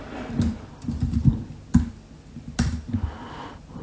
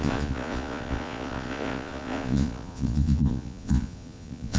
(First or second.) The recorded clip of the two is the first